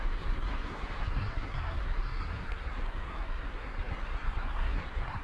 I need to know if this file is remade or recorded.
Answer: remade